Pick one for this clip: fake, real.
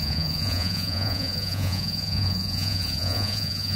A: fake